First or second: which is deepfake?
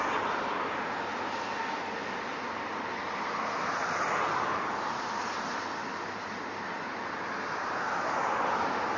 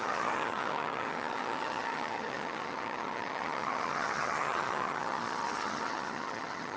second